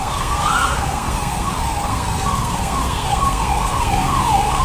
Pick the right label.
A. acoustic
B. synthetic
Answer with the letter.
B